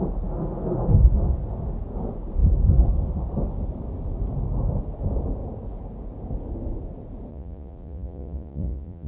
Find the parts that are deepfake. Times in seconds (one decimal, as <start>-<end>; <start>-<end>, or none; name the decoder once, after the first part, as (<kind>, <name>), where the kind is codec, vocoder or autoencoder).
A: 7.3-9.1 (vocoder, Vocos)